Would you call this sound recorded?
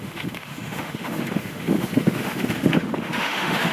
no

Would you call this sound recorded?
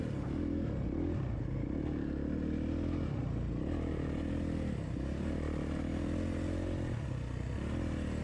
yes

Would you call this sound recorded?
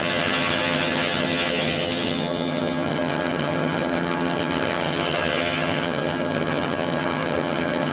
no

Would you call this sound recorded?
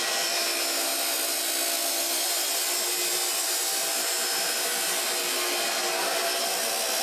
yes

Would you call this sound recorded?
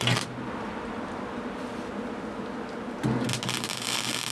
yes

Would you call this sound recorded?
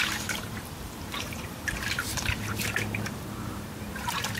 no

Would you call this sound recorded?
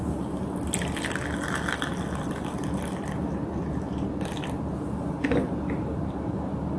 yes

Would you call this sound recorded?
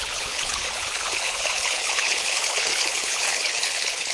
no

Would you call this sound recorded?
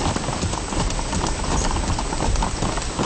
yes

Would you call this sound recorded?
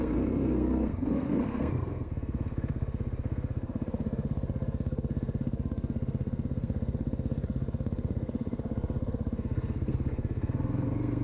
no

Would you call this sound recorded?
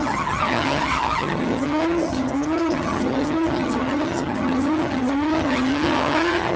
no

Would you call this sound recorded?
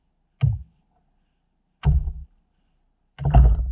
yes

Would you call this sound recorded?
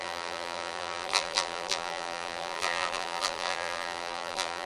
no